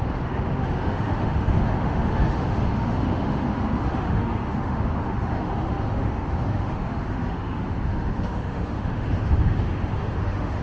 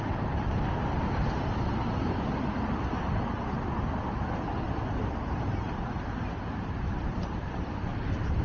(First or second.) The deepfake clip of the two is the first